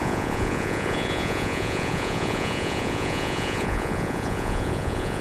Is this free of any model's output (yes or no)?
no